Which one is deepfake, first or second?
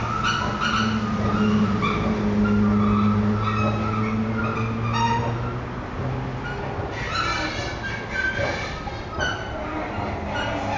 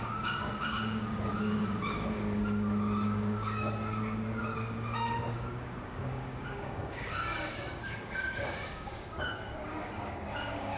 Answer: second